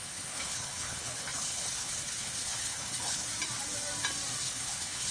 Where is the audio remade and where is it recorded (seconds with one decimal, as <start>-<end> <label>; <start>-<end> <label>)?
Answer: 0.0-3.3 remade; 3.3-4.4 recorded; 4.4-5.1 remade